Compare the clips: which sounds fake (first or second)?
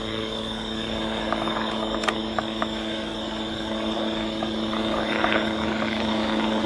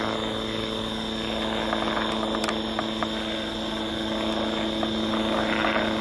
first